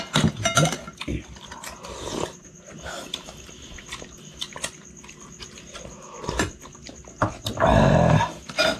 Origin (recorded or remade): recorded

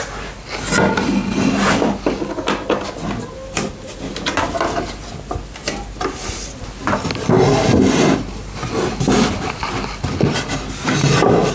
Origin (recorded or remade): recorded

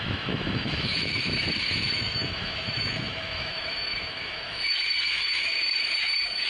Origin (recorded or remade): remade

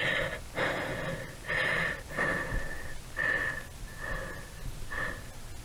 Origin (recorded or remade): recorded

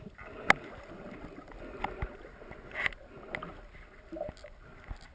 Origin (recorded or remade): recorded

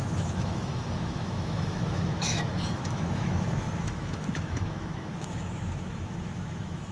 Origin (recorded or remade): remade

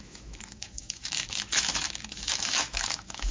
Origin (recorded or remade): remade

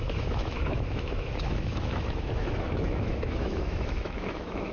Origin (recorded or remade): remade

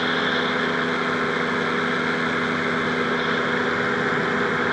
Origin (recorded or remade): recorded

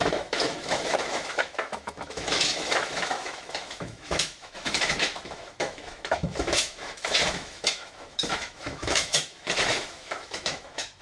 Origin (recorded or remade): remade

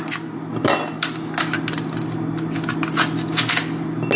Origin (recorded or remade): recorded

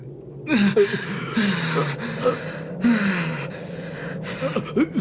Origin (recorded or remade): recorded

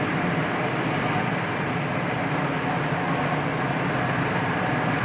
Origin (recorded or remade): recorded